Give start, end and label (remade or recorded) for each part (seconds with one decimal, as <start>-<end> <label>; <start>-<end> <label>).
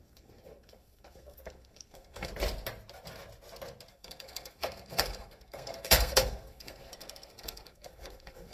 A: 0.0-2.3 remade; 2.3-3.9 recorded; 3.9-8.5 remade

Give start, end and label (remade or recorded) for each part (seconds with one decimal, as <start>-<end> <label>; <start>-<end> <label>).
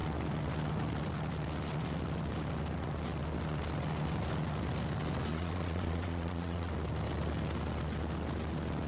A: 0.0-5.3 recorded; 5.3-6.7 remade; 6.7-8.9 recorded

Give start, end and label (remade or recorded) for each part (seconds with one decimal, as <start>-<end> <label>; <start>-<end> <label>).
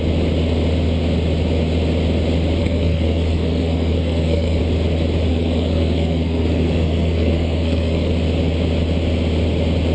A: 0.0-2.6 recorded; 2.6-4.6 remade; 4.6-5.3 recorded; 5.3-8.1 remade; 8.1-9.9 recorded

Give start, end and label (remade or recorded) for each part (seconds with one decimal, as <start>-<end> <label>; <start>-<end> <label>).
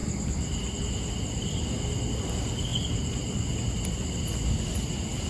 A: 0.0-5.3 recorded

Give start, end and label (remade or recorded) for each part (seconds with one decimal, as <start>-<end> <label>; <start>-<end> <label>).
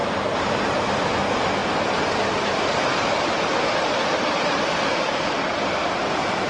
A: 0.0-6.5 remade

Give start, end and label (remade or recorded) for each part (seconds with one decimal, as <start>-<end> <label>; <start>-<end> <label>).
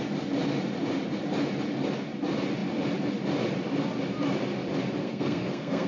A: 0.0-5.0 recorded; 5.0-5.9 remade